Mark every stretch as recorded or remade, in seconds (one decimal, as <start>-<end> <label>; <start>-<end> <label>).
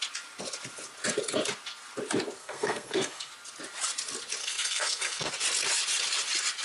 0.0-2.4 recorded; 2.4-3.3 remade; 3.3-4.4 recorded; 4.4-5.3 remade; 5.3-6.6 recorded